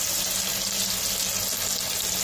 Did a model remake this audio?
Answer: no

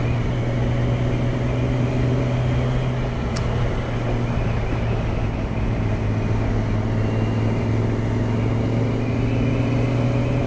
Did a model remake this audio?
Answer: no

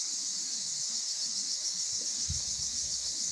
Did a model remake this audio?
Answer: yes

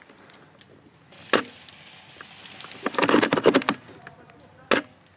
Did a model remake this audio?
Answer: no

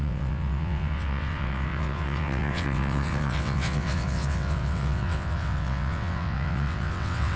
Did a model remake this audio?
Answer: yes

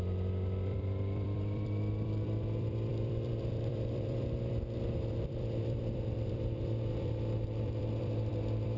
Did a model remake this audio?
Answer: yes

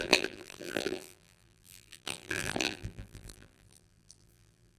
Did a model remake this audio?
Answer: yes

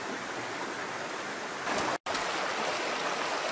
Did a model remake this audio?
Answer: no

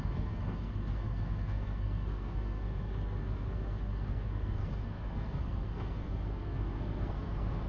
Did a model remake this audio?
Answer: yes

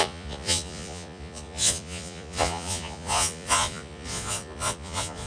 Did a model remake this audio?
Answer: yes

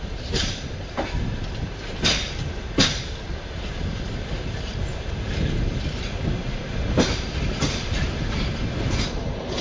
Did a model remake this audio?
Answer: yes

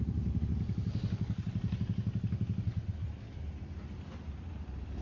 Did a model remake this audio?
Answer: no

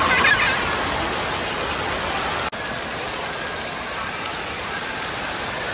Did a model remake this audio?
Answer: no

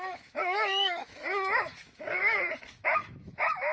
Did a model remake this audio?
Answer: yes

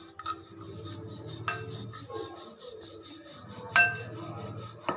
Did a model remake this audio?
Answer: no